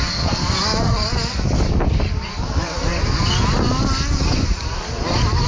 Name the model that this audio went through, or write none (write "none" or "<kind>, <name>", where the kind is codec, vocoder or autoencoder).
none